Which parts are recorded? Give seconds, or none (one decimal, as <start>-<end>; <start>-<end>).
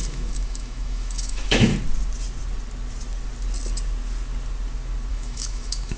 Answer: 1.7-5.1